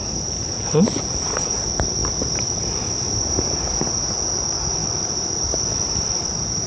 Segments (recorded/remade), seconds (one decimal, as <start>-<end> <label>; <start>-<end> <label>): 0.0-2.0 recorded; 2.0-2.8 remade; 2.8-4.8 recorded; 4.8-6.7 remade